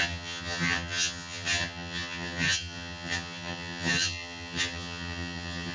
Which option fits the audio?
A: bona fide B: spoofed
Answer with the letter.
B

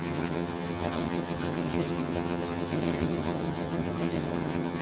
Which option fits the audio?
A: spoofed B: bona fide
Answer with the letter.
A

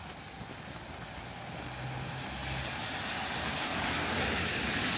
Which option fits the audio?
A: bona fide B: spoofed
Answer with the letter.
A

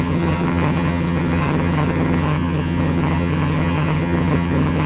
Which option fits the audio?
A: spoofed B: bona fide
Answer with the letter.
A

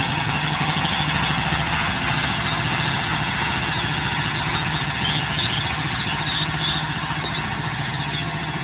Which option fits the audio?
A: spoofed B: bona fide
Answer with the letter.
A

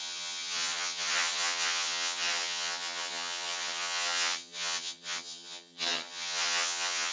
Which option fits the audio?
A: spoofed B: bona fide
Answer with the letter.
A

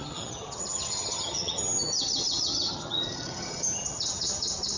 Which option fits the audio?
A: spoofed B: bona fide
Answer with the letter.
A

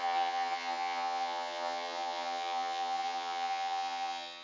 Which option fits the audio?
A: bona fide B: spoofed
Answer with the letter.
B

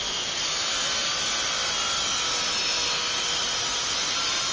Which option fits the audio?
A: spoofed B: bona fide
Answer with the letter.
B